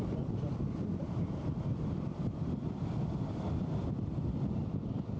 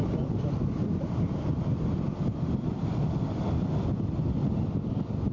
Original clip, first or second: second